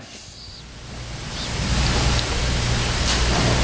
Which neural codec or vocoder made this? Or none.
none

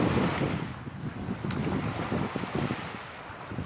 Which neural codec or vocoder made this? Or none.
none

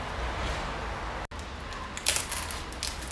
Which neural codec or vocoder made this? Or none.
none